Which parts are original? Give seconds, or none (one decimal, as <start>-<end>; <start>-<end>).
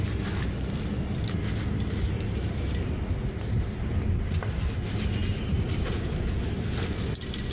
0.0-7.5